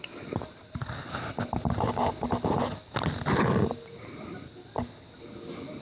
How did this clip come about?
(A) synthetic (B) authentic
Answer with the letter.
B